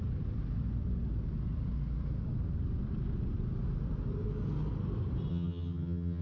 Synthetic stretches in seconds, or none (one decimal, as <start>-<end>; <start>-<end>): 5.3-6.2